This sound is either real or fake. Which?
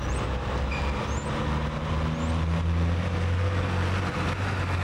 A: real